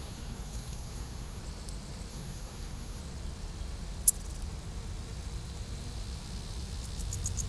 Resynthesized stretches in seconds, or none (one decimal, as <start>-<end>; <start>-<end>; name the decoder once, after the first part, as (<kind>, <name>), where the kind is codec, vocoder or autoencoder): 0.0-1.4 (codec, SNAC); 2.1-3.0